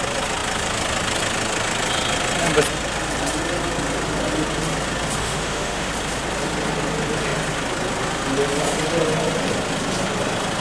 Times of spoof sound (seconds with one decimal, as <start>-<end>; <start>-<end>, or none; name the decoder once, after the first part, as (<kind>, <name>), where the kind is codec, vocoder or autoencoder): 5.2-5.9 (autoencoder, DAC-VAE)